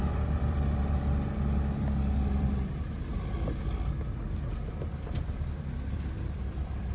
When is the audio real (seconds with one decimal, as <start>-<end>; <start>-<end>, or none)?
3.1-3.6